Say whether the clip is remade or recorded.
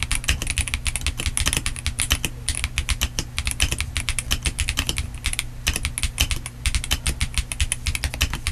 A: recorded